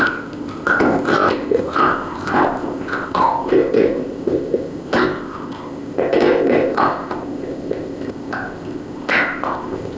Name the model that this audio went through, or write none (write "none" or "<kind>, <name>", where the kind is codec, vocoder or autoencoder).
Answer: codec, ZipCodec